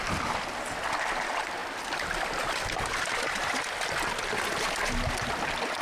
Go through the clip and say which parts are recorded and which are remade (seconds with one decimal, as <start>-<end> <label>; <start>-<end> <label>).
0.0-5.8 recorded